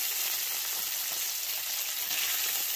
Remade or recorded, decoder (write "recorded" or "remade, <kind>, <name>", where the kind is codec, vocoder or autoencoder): recorded